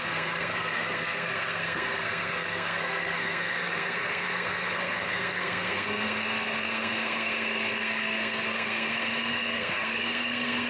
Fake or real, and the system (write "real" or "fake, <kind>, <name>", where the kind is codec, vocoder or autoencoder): fake, codec, SNAC